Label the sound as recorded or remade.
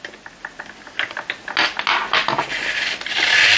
recorded